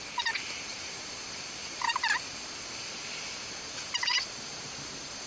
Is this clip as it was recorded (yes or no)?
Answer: yes